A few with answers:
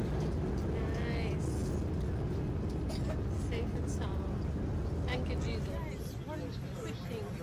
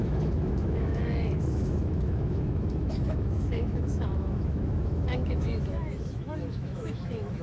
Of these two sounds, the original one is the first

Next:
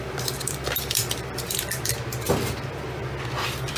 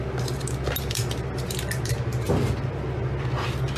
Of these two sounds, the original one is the second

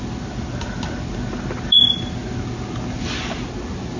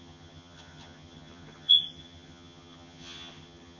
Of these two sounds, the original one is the first